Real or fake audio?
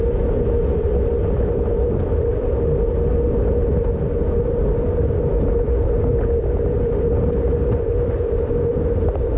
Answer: fake